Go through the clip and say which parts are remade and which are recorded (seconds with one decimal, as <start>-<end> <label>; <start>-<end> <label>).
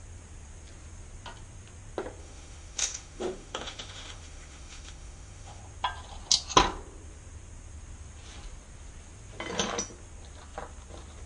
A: 0.0-2.2 recorded; 2.2-5.6 remade; 5.6-11.3 recorded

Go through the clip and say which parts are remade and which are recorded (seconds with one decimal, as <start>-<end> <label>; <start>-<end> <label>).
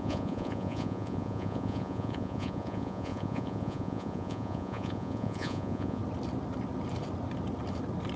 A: 0.0-6.0 remade; 6.0-8.2 recorded